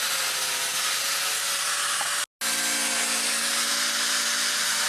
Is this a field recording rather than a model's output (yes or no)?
yes